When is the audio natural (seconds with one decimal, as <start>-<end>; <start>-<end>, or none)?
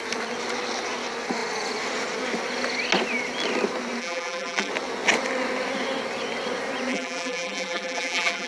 0.0-4.0; 4.7-6.9